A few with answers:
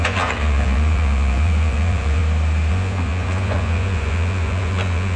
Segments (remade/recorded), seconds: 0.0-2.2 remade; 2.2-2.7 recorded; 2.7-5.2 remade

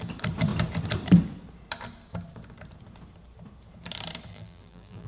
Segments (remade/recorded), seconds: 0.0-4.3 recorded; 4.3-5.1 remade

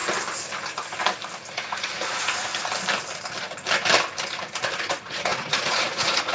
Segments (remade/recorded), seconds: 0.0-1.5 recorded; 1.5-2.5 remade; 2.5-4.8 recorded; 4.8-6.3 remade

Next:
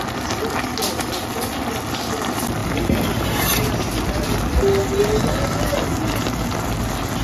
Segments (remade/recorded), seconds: 0.0-7.2 recorded